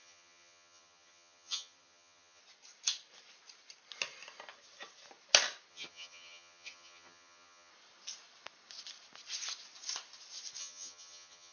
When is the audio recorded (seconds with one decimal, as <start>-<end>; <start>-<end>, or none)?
2.4-5.7; 7.7-10.6